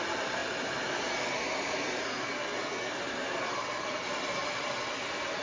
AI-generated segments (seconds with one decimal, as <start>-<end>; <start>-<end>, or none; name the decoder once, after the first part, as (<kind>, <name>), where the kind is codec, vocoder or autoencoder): none